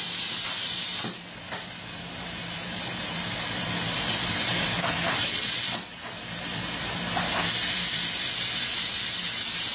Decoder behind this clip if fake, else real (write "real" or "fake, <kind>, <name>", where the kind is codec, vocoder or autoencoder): fake, vocoder, BigVGAN v2